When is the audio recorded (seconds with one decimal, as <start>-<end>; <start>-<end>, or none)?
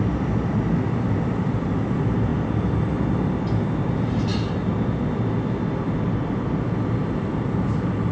0.0-8.1